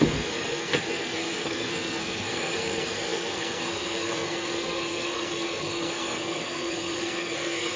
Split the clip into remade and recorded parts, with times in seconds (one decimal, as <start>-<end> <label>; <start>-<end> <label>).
0.0-7.8 remade